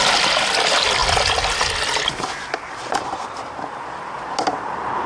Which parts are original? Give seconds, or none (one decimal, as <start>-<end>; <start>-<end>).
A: 0.0-5.1